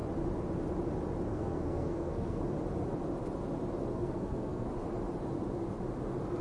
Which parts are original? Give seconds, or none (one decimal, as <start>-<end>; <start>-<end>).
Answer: 0.0-1.3; 2.4-3.9; 4.7-6.4